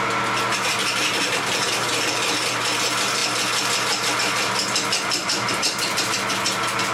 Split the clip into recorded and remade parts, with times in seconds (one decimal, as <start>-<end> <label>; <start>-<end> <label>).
0.0-5.2 recorded; 5.2-6.1 remade; 6.1-6.9 recorded

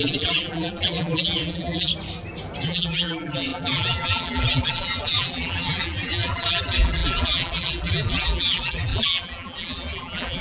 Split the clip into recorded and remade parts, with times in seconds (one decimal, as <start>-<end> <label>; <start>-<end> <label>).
0.0-1.9 remade; 1.9-2.6 recorded; 2.6-10.4 remade